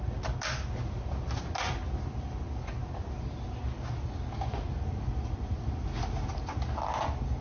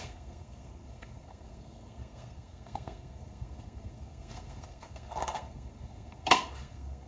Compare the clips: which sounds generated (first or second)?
second